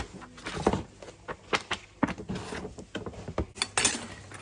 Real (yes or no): yes